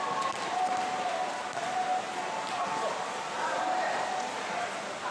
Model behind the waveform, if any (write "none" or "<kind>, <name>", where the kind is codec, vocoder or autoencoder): none